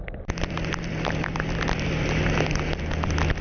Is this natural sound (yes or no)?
yes